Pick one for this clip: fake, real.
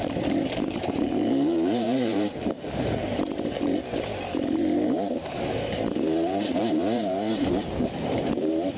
fake